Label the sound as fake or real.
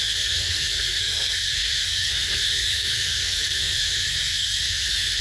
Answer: fake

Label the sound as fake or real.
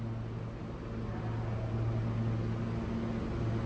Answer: real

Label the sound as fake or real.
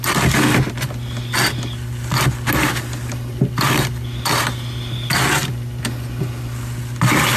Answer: real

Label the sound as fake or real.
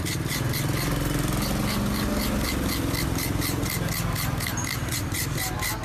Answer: real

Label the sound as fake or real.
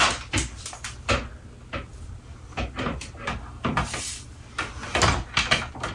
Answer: real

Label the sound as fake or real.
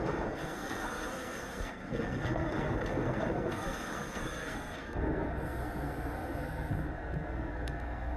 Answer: fake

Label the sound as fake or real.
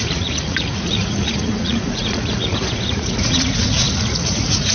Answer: fake